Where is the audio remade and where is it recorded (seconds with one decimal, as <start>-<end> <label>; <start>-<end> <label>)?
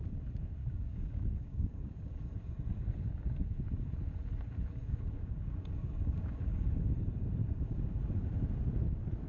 0.0-0.6 recorded; 0.6-2.1 remade; 2.1-4.8 recorded; 4.8-6.8 remade; 6.8-7.4 recorded; 7.4-8.0 remade; 8.0-9.3 recorded